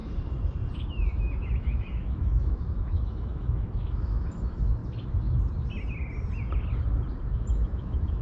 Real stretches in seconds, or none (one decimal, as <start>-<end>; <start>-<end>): 0.0-0.9; 4.8-7.2